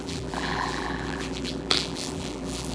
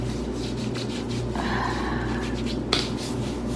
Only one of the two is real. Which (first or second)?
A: second